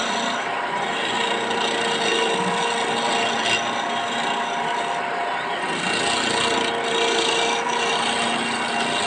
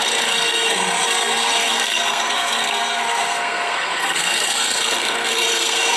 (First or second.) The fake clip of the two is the second